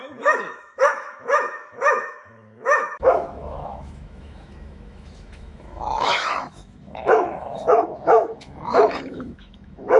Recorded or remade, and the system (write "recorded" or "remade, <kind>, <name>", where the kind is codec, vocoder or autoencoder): remade, autoencoder, DAC-VAE